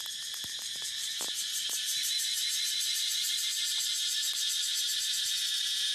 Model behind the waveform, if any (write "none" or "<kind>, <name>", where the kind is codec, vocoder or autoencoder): vocoder, BigVGAN v2